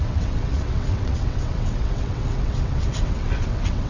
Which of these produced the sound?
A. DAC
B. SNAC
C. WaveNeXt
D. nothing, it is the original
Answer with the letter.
C